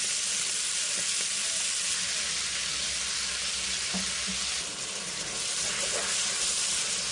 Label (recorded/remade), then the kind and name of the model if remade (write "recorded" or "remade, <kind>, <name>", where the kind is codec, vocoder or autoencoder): recorded